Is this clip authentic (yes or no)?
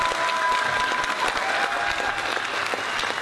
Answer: yes